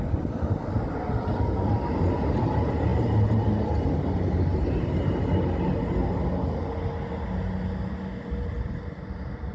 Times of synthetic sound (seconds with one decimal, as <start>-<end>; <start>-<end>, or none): none

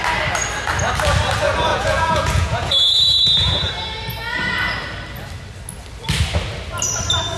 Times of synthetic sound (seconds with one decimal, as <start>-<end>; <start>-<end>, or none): 1.7-3.7

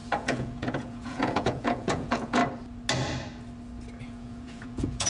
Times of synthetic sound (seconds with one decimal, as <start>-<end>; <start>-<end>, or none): 0.0-2.4; 4.0-5.1

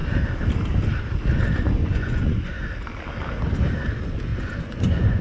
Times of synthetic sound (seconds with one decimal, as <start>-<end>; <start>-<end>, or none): 1.8-2.6; 4.3-5.2

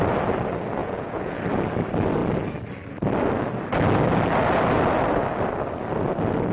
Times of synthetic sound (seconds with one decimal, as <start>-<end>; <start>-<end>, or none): 0.8-1.4